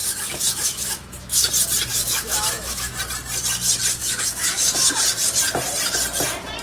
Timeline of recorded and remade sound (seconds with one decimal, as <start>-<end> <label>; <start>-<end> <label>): 0.0-1.5 remade; 1.5-1.9 recorded; 1.9-2.9 remade; 2.9-4.0 recorded; 4.0-4.9 remade; 4.9-6.6 recorded